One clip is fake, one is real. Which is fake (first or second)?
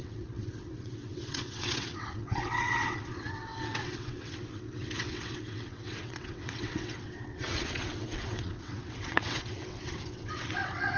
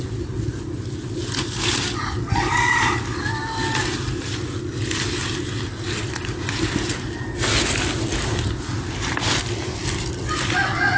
first